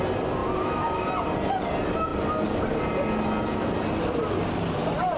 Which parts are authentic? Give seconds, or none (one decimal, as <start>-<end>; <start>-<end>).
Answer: 0.0-5.2